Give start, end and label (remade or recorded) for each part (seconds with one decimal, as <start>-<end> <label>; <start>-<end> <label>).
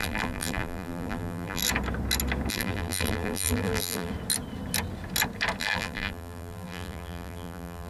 0.0-1.6 remade; 1.6-2.5 recorded; 2.5-4.1 remade; 4.1-5.6 recorded; 5.6-7.9 remade